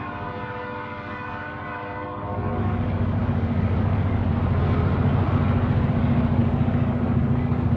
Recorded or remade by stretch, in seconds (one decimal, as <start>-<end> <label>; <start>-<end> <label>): 0.0-4.3 remade; 4.3-5.9 recorded; 5.9-7.8 remade